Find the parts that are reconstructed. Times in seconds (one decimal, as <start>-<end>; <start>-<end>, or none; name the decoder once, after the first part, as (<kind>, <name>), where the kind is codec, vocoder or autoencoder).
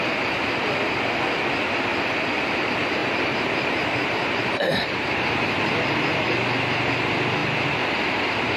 3.0-5.9 (vocoder, BigVGAN v2)